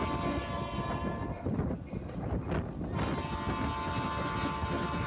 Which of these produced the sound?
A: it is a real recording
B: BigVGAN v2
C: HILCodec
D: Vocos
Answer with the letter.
A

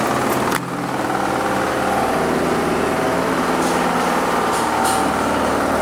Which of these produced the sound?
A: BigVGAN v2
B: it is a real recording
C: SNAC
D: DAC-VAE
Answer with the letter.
B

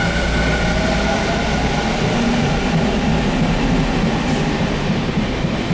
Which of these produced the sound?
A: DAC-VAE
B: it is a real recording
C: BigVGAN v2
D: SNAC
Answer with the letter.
B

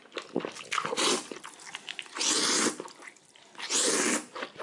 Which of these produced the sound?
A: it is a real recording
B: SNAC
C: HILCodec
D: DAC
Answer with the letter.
A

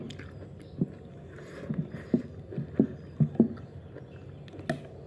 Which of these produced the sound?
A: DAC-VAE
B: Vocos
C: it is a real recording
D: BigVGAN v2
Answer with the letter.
C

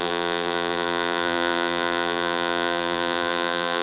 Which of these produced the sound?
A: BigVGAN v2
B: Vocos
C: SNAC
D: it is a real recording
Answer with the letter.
A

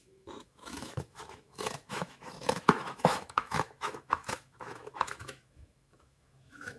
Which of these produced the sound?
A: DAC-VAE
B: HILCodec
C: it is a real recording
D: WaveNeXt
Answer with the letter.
A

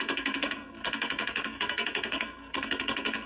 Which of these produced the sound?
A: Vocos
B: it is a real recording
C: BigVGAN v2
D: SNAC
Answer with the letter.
D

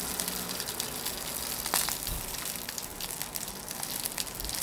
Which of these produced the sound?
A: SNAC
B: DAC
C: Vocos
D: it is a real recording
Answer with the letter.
D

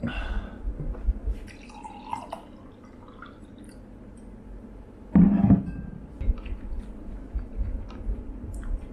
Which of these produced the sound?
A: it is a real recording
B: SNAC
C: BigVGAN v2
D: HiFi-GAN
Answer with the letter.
A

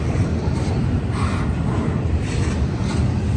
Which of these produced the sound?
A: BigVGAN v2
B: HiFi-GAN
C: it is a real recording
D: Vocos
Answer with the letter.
C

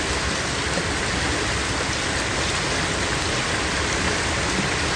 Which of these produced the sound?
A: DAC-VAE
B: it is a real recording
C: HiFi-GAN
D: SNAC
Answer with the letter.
B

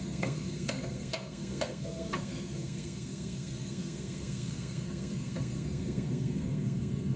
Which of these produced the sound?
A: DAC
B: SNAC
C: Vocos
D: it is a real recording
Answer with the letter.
B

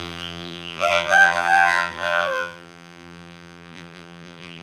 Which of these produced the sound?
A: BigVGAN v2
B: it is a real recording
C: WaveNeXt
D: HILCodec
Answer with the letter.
A